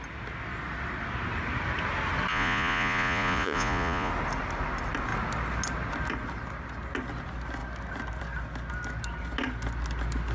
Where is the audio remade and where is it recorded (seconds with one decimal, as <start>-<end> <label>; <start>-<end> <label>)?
0.0-2.3 recorded; 2.3-4.1 remade; 4.1-10.3 recorded